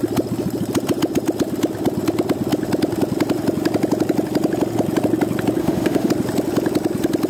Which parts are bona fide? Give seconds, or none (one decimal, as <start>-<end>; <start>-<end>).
0.0-5.6; 6.1-7.3